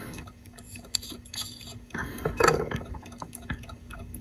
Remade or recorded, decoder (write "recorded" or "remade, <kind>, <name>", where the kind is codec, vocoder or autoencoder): remade, codec, DAC